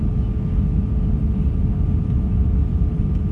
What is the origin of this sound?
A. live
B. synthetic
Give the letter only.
A